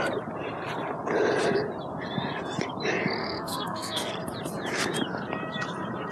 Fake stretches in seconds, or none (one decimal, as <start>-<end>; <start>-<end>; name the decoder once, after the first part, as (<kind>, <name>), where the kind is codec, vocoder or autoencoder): 3.2-4.1 (codec, SNAC)